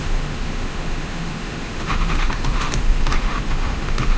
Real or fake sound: fake